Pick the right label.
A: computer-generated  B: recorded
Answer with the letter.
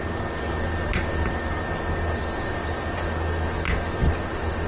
B